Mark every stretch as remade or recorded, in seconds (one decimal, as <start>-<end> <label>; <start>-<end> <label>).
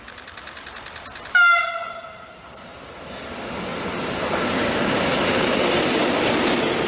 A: 0.0-6.9 recorded